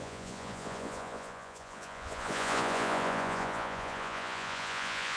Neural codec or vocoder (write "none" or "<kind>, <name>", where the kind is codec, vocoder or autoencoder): vocoder, Vocos